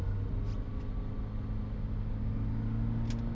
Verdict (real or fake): real